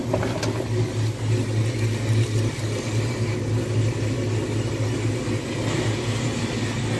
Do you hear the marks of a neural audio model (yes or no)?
no